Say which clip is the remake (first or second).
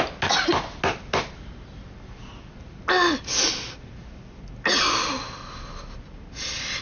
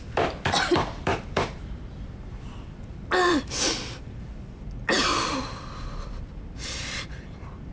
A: second